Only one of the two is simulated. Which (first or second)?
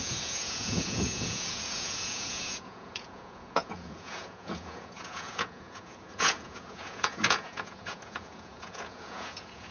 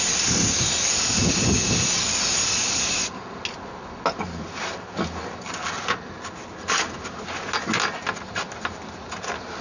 first